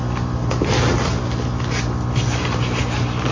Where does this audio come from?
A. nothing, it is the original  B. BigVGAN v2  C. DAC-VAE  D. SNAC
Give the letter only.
A